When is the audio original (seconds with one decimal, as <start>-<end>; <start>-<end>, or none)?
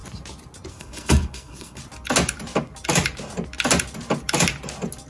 0.0-0.7; 1.8-5.1